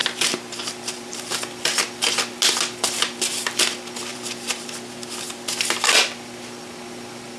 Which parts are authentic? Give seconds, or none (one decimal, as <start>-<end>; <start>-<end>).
1.3-4.1; 4.7-7.4